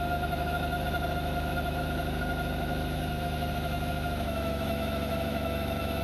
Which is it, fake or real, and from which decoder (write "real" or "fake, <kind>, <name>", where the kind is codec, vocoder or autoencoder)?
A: fake, autoencoder, DAC-VAE